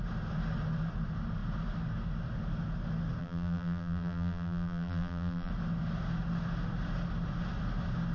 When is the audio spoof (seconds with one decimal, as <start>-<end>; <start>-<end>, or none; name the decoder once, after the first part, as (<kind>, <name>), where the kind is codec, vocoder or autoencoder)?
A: 3.2-5.5 (vocoder, BigVGAN v2)